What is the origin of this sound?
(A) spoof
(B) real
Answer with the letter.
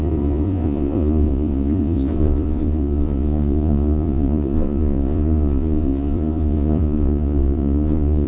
A